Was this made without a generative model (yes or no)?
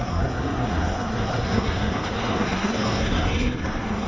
no